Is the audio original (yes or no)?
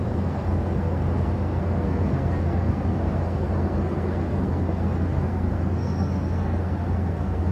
no